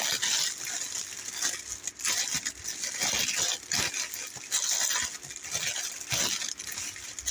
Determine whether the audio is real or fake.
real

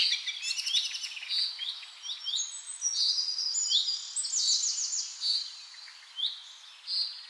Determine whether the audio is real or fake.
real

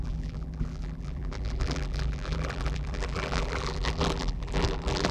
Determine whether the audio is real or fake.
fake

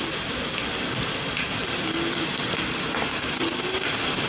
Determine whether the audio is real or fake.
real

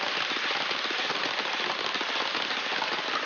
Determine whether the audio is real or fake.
real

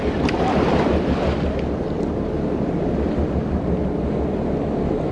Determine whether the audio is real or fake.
fake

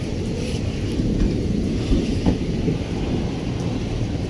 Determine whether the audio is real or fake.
fake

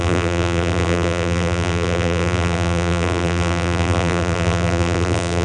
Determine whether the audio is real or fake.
fake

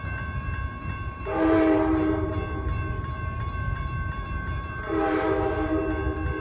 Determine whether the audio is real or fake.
fake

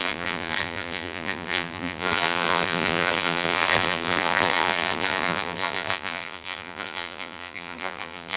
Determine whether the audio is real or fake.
fake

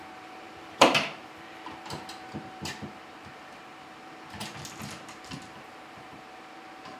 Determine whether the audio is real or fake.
fake